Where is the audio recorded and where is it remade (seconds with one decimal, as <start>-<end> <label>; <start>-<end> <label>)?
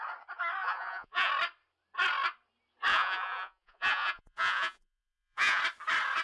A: 0.0-0.6 recorded; 0.6-1.3 remade; 1.3-2.9 recorded; 2.9-5.6 remade; 5.6-6.2 recorded